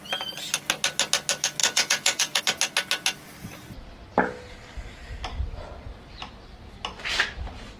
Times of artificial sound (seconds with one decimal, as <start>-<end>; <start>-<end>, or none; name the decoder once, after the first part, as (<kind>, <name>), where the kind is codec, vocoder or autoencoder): 1.6-2.4 (vocoder, Vocos)